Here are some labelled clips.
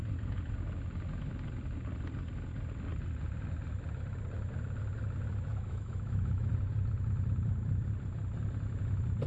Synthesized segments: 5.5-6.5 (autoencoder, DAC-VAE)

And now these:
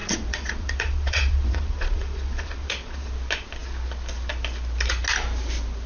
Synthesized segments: 0.0-3.1 (vocoder, Vocos)

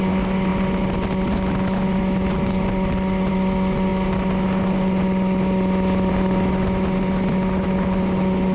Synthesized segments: none

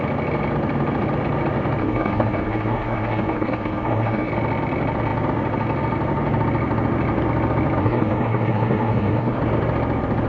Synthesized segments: 1.8-4.3 (codec, SNAC); 7.8-9.4